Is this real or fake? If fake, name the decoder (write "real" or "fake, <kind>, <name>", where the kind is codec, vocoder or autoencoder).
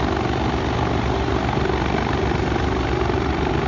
real